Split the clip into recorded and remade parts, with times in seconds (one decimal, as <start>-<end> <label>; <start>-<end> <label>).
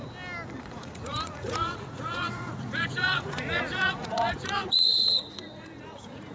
0.0-0.6 recorded; 0.6-6.3 remade